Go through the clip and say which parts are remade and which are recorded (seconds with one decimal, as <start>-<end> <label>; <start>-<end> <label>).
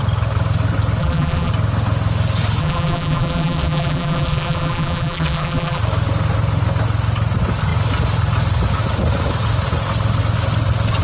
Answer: 0.0-1.0 recorded; 1.0-1.5 remade; 1.5-2.6 recorded; 2.6-5.8 remade; 5.8-11.0 recorded